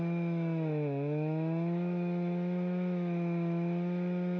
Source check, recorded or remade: remade